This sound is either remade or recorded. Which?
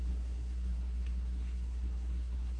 remade